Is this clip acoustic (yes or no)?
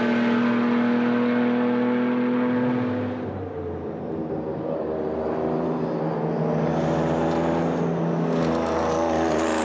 yes